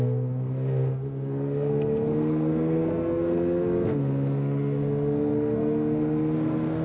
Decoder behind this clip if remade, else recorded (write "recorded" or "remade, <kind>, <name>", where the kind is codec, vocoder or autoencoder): remade, codec, SNAC